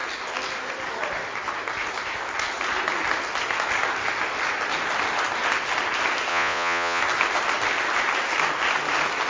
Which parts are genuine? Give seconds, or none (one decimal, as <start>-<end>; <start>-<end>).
0.0-6.3; 7.0-9.3